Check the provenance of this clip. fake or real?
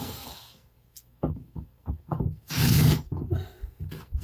fake